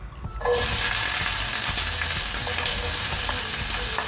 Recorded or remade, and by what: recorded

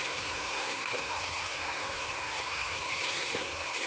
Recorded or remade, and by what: remade, codec, SNAC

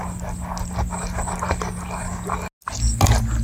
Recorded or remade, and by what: recorded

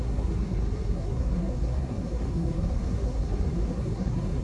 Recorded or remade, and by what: remade, codec, SNAC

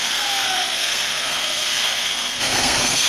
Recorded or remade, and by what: remade, codec, SNAC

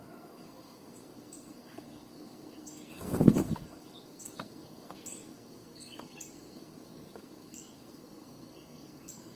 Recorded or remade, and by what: remade, codec, SNAC